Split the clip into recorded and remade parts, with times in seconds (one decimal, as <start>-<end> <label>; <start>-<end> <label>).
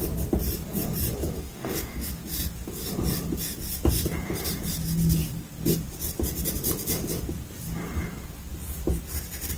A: 0.0-1.4 recorded; 1.4-2.1 remade; 2.1-9.6 recorded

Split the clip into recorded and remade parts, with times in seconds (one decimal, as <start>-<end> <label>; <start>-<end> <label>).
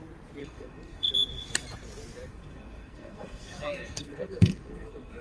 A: 0.0-0.4 recorded; 0.4-1.1 remade; 1.1-2.3 recorded; 2.3-5.2 remade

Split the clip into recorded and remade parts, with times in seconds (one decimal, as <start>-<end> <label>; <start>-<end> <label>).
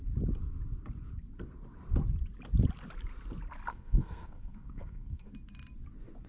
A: 0.0-3.7 recorded; 3.7-5.3 remade; 5.3-6.3 recorded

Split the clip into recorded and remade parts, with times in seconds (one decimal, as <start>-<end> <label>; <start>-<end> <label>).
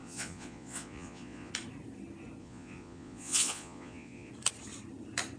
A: 0.0-1.5 remade; 1.5-2.4 recorded; 2.4-4.3 remade; 4.3-5.4 recorded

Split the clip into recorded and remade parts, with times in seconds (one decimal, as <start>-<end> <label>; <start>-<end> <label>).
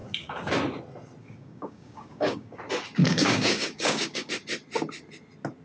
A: 0.0-0.5 remade; 0.5-1.2 recorded; 1.2-2.6 remade; 2.6-3.0 recorded; 3.0-4.3 remade; 4.3-5.6 recorded